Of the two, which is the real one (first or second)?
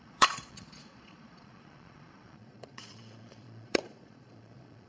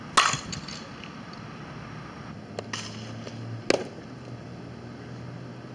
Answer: second